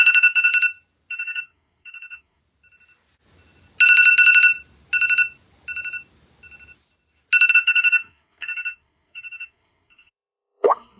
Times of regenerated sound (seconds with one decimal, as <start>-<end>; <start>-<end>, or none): 0.0-0.5; 1.1-2.4; 7.5-11.0